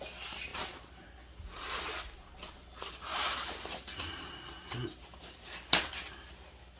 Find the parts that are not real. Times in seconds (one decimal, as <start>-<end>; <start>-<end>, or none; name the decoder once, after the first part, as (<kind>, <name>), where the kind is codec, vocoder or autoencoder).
0.5-1.1 (vocoder, BigVGAN v2); 3.1-5.8

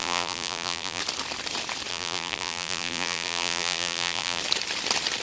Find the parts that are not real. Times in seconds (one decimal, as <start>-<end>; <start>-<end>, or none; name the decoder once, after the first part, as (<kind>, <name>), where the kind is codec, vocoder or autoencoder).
0.0-1.0 (vocoder, BigVGAN v2); 1.9-4.4

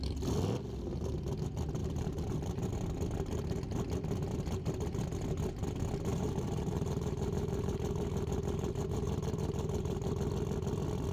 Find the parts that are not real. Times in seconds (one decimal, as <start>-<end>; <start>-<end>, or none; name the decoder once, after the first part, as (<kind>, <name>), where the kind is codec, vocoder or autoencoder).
1.8-2.7 (vocoder, BigVGAN v2); 6.1-10.1